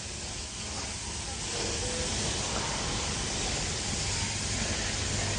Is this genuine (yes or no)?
yes